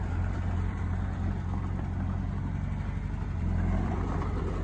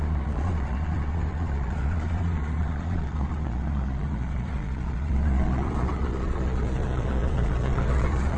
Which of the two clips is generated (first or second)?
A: second